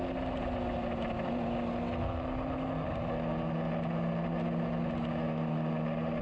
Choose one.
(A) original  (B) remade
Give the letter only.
A